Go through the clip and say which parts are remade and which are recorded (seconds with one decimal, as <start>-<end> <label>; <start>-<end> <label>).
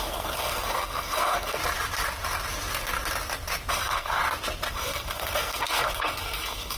0.0-1.6 remade; 1.6-3.7 recorded; 3.7-4.2 remade; 4.2-4.7 recorded; 4.7-6.8 remade